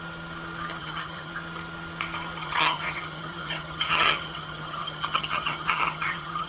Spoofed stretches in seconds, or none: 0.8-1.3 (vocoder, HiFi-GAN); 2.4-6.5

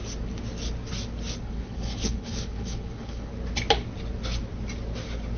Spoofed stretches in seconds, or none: 1.4-3.3 (codec, HILCodec)